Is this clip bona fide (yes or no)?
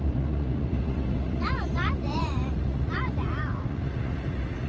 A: no